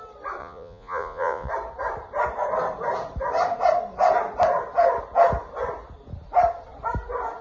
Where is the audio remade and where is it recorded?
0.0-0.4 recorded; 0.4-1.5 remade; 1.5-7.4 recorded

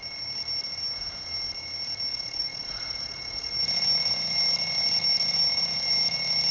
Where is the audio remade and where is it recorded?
0.0-2.1 recorded; 2.1-3.6 remade; 3.6-6.5 recorded